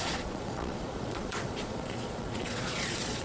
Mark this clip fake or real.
fake